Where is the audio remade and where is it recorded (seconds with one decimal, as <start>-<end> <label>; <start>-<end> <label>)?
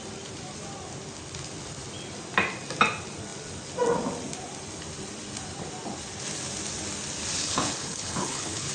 0.0-7.4 recorded; 7.4-8.7 remade